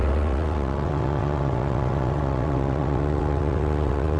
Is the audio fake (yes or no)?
yes